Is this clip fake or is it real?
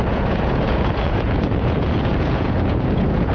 fake